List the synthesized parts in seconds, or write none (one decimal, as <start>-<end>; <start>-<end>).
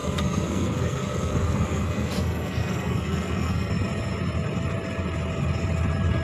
0.0-3.7